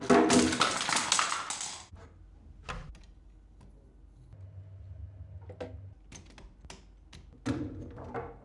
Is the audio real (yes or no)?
yes